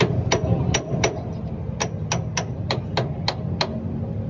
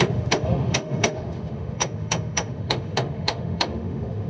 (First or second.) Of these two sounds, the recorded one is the first